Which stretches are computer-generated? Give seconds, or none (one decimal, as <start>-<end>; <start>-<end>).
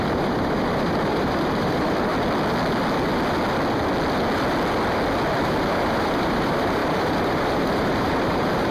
0.0-2.1; 5.4-8.7